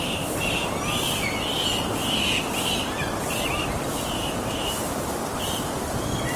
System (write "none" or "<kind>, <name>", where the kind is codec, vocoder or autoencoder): none